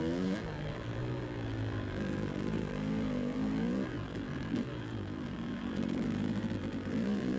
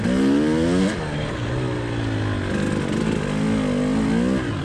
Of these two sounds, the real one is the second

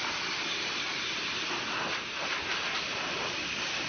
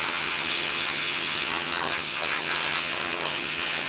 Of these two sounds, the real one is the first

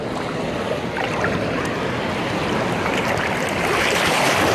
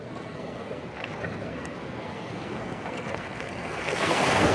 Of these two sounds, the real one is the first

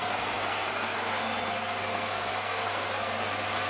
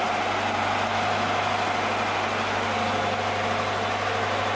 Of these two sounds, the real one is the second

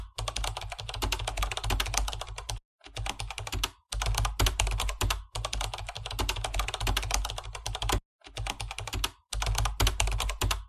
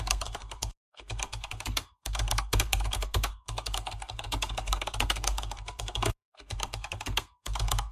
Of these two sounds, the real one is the first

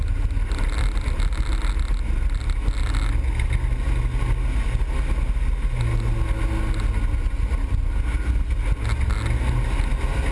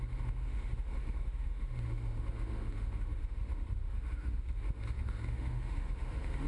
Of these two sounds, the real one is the first